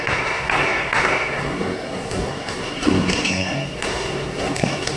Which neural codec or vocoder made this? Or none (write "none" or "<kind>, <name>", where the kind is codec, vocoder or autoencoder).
codec, SNAC